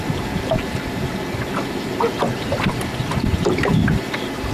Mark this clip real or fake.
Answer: real